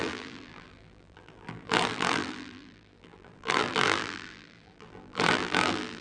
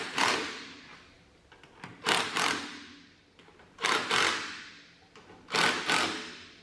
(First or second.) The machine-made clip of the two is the first